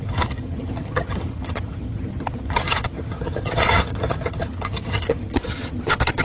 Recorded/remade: remade